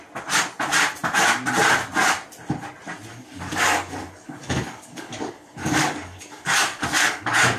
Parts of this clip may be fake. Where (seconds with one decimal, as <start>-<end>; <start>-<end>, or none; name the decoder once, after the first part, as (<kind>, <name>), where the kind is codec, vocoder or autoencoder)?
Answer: 3.1-7.6 (codec, DAC)